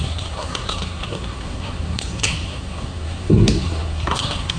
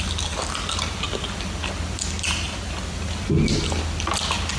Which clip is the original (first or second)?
second